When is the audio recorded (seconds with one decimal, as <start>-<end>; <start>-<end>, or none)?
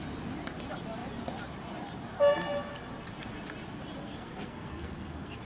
0.0-4.0